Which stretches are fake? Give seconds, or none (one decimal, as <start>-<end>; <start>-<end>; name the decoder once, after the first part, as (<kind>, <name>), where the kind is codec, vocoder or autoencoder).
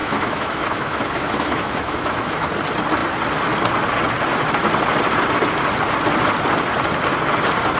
0.0-2.5 (autoencoder, DAC-VAE)